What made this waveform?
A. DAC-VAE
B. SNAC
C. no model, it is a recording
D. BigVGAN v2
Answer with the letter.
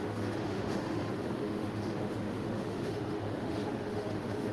A